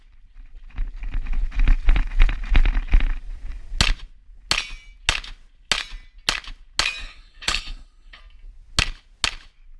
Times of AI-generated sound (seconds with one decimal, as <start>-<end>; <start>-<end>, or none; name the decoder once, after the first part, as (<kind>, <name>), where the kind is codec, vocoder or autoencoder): 7.0-8.2 (codec, HILCodec)